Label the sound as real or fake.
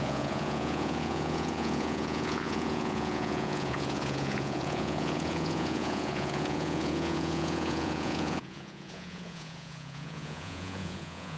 fake